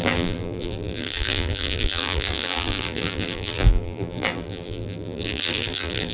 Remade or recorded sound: remade